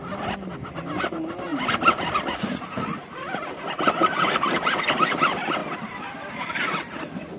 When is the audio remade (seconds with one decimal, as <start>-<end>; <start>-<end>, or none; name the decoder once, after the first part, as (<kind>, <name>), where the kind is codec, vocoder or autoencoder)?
1.5-2.1 (vocoder, BigVGAN v2); 3.0-4.2